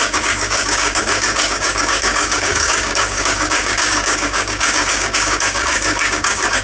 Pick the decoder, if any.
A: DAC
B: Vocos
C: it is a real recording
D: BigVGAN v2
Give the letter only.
A